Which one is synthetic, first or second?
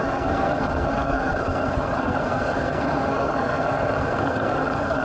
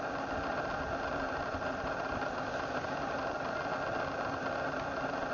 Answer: first